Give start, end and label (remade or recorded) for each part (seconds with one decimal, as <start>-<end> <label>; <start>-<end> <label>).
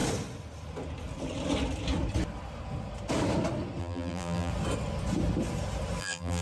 0.0-3.8 recorded; 3.8-4.5 remade; 4.5-6.0 recorded; 6.0-6.4 remade